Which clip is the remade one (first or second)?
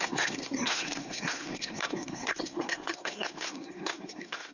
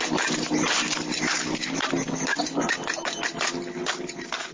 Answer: first